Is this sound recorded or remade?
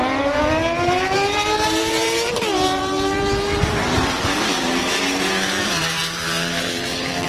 remade